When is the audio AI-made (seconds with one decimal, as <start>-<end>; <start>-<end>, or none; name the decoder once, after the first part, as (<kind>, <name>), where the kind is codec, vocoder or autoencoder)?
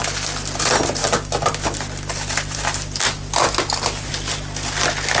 none